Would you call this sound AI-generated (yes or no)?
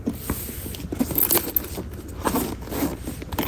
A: no